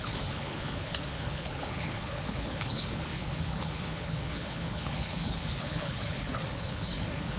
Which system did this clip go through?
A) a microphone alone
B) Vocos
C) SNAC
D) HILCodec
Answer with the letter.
D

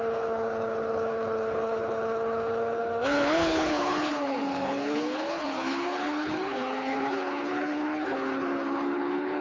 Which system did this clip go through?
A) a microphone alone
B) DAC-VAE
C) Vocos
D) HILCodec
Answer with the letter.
D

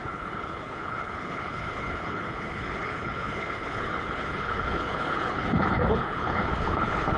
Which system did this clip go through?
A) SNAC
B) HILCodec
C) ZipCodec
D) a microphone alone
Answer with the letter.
B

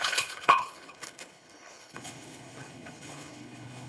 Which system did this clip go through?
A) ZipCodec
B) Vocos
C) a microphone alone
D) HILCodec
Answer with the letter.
D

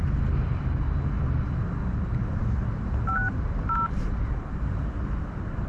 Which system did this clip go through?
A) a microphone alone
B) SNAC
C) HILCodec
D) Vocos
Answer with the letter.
A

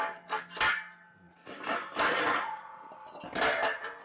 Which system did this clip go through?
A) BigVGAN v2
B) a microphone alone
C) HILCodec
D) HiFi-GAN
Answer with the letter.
B